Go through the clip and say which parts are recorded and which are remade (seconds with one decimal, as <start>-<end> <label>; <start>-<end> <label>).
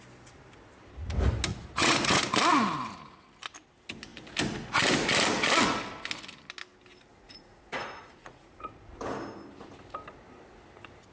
0.0-1.5 recorded; 1.5-2.2 remade; 2.2-7.1 recorded; 7.1-8.9 remade; 8.9-11.1 recorded